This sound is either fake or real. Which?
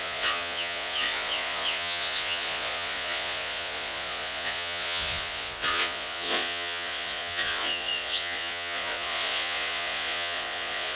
fake